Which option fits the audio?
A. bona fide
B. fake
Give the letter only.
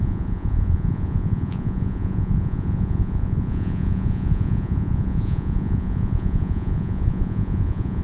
B